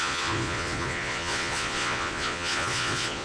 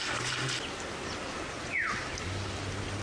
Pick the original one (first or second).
second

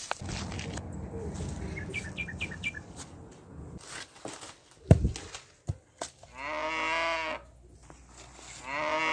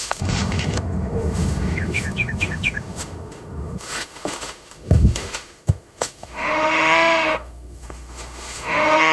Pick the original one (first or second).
first